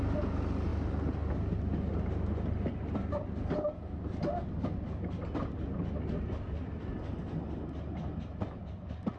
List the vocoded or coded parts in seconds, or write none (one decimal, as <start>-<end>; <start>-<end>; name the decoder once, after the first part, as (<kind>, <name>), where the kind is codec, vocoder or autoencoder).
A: none